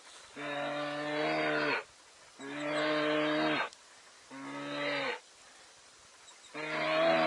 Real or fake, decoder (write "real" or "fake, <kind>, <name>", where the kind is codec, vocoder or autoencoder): real